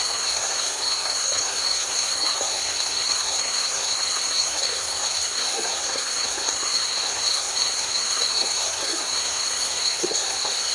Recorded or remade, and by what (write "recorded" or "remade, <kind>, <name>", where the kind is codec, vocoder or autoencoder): remade, codec, SNAC